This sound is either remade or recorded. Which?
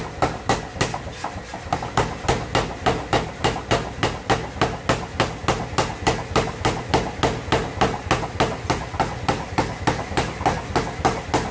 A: recorded